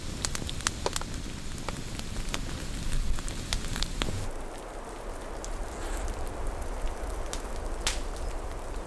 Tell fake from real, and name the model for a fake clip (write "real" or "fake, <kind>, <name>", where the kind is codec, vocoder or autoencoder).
real